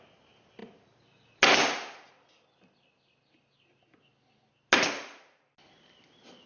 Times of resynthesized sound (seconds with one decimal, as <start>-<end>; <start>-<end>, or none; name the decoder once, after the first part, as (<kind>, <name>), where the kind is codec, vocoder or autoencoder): none